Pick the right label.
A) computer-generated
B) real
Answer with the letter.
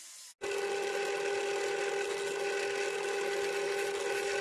B